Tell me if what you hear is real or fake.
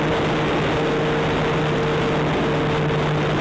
real